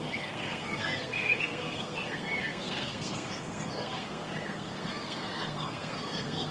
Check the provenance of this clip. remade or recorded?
remade